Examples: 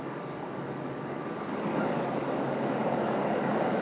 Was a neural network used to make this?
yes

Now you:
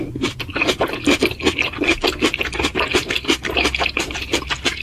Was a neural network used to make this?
no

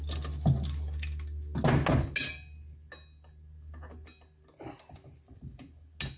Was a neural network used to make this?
no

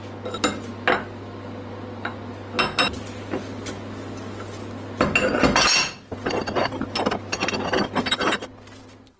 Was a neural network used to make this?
no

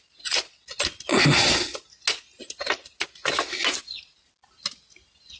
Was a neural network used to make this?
no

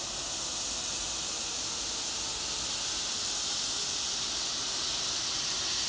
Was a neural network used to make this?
no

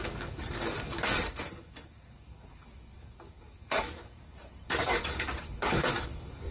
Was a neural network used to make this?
yes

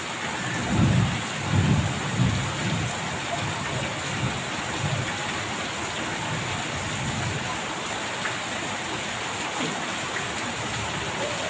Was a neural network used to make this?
no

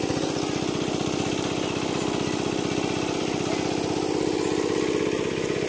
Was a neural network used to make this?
no